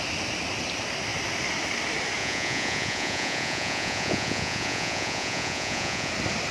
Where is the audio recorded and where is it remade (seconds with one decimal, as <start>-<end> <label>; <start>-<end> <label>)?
0.0-2.2 recorded; 2.2-6.1 remade; 6.1-6.5 recorded